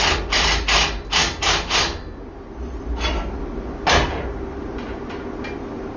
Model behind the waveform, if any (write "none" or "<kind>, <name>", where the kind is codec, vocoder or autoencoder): none